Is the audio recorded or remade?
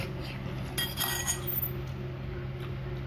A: recorded